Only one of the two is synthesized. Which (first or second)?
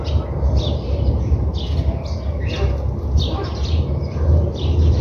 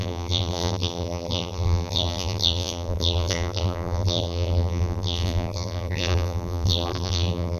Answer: second